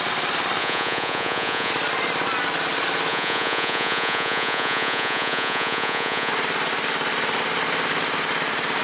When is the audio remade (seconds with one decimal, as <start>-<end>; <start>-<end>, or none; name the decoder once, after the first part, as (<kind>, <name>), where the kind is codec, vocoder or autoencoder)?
0.6-1.7 (vocoder, Vocos); 3.1-6.3